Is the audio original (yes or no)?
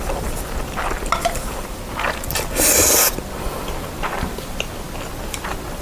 yes